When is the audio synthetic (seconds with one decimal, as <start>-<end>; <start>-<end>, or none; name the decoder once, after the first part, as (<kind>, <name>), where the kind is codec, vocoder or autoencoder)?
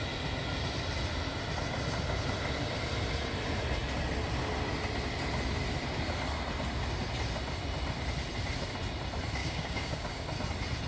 9.4-10.2 (codec, DAC)